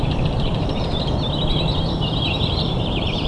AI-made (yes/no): yes